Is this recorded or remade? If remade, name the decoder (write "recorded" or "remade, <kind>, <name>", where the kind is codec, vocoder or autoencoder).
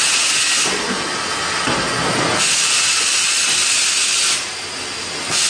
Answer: recorded